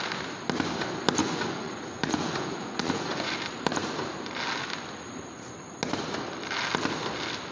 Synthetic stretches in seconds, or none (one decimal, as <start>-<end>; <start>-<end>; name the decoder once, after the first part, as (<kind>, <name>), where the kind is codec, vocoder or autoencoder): 1.2-3.3 (vocoder, Vocos)